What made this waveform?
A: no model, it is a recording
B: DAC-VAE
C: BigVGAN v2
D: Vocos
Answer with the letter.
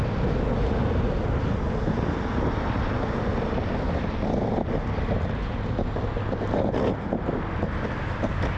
A